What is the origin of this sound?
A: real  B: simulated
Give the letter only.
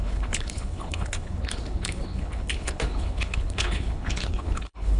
B